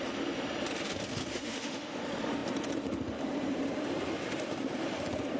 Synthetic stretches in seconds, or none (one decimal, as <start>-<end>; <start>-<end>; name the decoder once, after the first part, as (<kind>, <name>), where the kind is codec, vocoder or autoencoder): 1.3-2.0 (autoencoder, DAC-VAE)